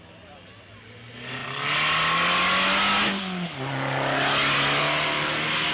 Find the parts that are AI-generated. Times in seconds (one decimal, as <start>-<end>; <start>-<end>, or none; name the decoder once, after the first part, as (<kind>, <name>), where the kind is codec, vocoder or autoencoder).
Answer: none

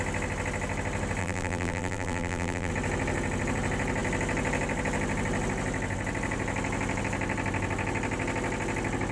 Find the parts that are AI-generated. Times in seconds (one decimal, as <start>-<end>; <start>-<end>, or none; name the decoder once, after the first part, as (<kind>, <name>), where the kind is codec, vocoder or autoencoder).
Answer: 1.2-2.7 (vocoder, BigVGAN v2)